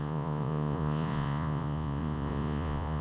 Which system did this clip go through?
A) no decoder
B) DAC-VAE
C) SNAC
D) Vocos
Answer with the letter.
D